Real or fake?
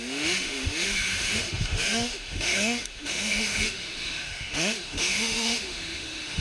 fake